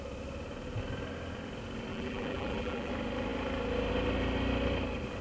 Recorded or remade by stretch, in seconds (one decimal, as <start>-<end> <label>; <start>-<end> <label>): 0.0-1.9 recorded; 1.9-2.9 remade; 2.9-5.2 recorded